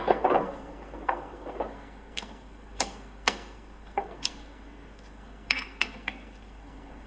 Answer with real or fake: fake